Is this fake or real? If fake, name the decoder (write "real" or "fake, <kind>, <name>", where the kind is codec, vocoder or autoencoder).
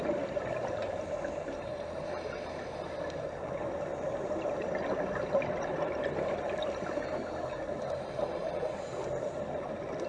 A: real